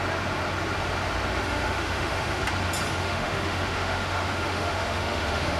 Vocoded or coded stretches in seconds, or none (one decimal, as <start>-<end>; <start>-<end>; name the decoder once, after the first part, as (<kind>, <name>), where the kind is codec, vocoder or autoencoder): 1.4-2.4 (autoencoder, DAC-VAE); 3.0-5.6